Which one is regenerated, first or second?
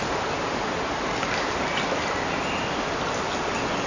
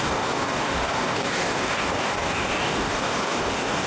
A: second